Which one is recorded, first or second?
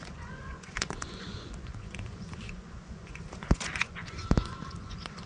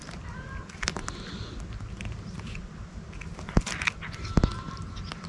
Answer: second